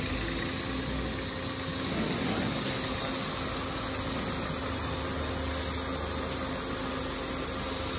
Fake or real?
real